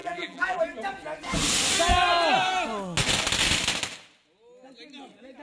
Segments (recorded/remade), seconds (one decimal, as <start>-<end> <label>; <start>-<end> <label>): 0.0-0.6 remade; 0.6-5.4 recorded